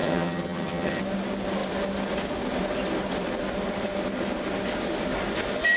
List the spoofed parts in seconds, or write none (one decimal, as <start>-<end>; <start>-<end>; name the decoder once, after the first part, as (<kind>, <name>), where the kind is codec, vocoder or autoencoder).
0.0-1.0 (vocoder, HiFi-GAN)